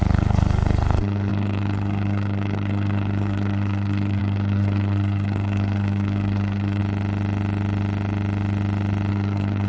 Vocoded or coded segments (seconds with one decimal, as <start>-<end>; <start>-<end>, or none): 0.0-6.8; 9.1-9.7